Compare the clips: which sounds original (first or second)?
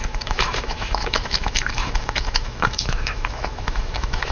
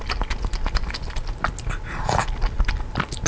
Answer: second